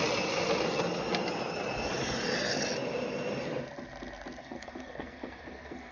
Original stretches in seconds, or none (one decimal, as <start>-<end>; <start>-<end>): 0.0-4.4